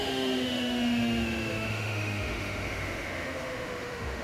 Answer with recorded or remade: remade